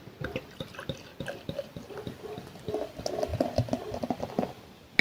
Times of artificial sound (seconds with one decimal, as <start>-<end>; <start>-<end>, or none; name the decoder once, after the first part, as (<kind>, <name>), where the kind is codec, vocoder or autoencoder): 1.1-1.7 (vocoder, BigVGAN v2); 3.3-4.2